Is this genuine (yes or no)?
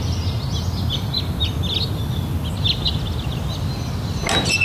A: yes